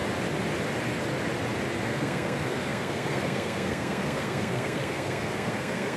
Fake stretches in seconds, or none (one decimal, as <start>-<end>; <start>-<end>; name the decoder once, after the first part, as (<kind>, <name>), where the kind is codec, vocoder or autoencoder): 1.8-6.0 (codec, SNAC)